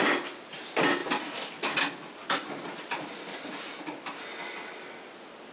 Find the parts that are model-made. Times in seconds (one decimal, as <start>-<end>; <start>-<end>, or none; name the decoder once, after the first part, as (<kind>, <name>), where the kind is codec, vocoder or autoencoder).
none